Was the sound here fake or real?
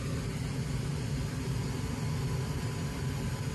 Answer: real